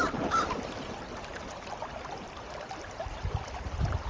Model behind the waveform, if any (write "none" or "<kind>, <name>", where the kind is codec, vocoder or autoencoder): vocoder, BigVGAN v2